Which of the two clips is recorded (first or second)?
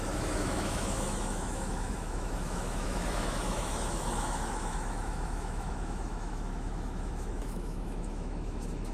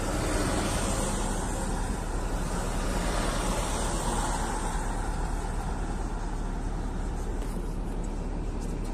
second